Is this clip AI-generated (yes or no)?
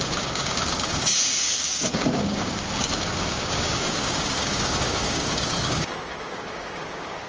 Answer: yes